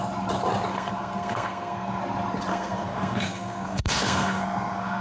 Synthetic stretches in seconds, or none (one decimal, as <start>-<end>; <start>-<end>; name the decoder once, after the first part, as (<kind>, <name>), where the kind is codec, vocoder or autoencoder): 0.7-2.0 (codec, SNAC); 2.5-5.0